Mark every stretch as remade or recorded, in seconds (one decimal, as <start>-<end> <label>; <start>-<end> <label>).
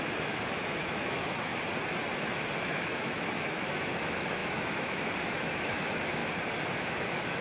0.0-1.5 remade; 1.5-2.6 recorded; 2.6-6.2 remade; 6.2-6.8 recorded; 6.8-7.4 remade